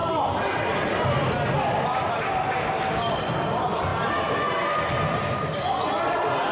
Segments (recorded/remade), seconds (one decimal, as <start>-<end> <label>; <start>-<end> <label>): 0.0-6.5 recorded